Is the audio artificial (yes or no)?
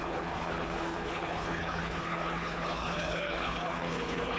yes